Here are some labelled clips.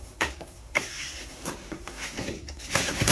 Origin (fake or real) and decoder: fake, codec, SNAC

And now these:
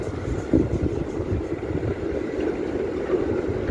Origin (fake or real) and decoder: real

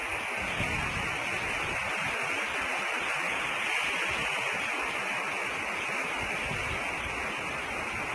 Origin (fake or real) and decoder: real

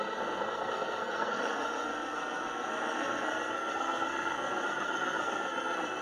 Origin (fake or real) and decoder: fake, codec, SNAC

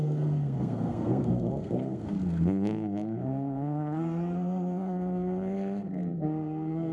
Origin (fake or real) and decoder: fake, codec, SNAC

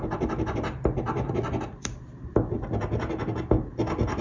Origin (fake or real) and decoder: real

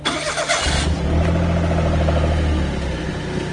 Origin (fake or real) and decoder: real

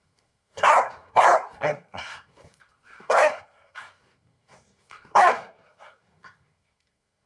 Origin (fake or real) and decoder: fake, codec, SNAC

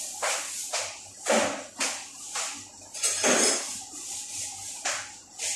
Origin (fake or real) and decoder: real